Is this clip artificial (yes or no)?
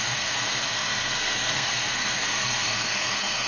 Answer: yes